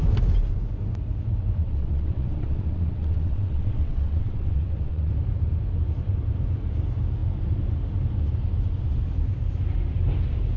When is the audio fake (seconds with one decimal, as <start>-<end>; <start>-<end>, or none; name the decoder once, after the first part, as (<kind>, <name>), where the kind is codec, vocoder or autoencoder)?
1.6-5.1 (vocoder, WaveNeXt)